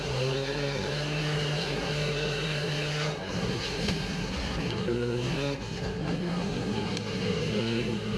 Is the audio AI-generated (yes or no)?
yes